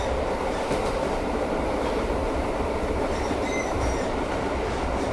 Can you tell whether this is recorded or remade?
remade